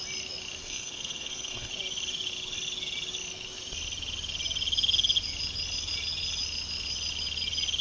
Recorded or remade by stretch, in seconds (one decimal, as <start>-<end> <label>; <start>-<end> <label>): 0.0-0.6 recorded; 0.6-1.7 remade; 1.7-7.8 recorded